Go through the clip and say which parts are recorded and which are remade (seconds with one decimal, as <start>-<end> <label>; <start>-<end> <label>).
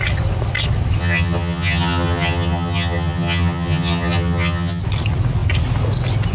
0.0-1.0 recorded; 1.0-4.8 remade; 4.8-6.3 recorded